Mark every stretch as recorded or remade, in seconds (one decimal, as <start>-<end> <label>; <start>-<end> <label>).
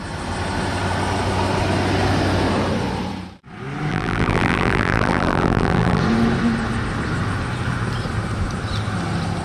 0.0-3.9 recorded; 3.9-6.0 remade; 6.0-9.4 recorded